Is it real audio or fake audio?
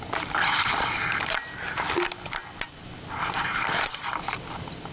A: real